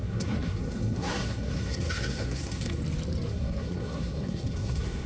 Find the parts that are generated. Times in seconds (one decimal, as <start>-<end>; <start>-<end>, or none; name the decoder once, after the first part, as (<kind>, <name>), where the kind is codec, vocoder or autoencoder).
0.0-2.8 (codec, SNAC); 3.3-5.1